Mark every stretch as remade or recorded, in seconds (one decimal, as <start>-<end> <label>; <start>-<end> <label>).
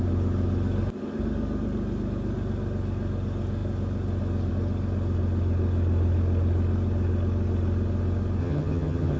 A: 0.0-8.4 recorded; 8.4-9.2 remade